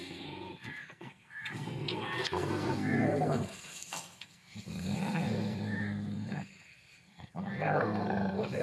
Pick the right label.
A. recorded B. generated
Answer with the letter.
B